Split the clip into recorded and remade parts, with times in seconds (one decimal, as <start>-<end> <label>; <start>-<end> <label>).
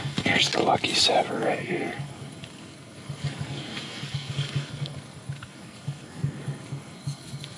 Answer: 0.0-0.5 remade; 0.5-1.3 recorded; 1.3-7.6 remade